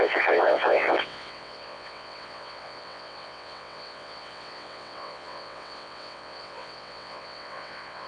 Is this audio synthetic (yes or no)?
yes